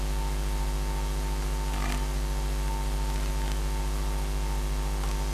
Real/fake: real